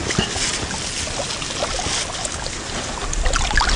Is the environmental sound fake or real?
real